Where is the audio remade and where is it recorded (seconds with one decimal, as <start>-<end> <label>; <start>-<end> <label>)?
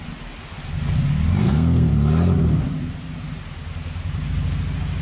0.0-1.4 recorded; 1.4-1.9 remade; 1.9-5.0 recorded